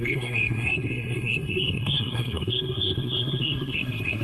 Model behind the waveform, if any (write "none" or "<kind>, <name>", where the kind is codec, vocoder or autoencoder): codec, SNAC